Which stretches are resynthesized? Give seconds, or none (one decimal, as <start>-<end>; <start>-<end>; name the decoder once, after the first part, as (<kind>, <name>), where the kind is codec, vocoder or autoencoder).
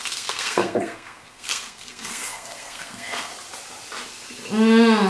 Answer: 0.0-3.3 (codec, SNAC)